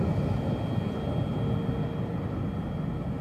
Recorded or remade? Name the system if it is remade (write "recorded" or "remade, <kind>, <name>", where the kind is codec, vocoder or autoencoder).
recorded